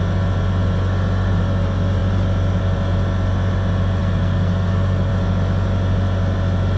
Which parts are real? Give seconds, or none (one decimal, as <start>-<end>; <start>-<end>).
0.0-4.0; 5.1-6.8